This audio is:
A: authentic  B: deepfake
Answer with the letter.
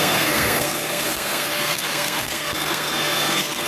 B